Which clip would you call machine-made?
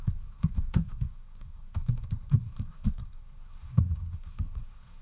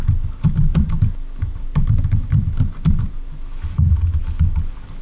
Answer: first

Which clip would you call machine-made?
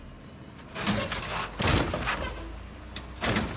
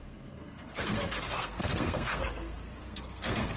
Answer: second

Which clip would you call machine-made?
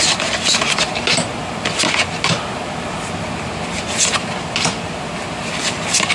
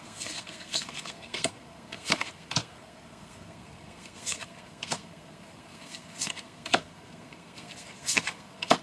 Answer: second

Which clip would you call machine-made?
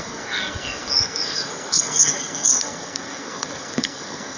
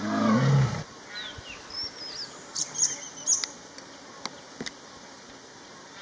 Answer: first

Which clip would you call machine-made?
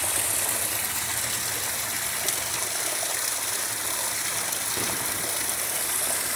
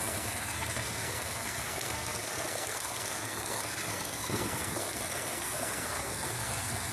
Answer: second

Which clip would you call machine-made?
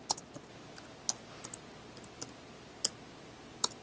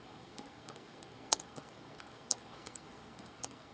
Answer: second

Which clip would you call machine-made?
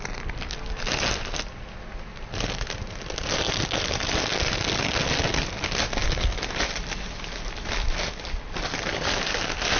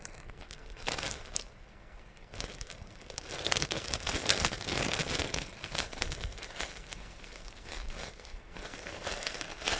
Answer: second